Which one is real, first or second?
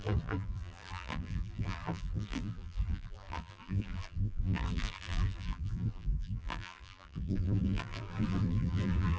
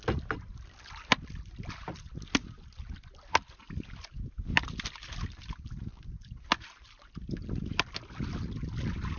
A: second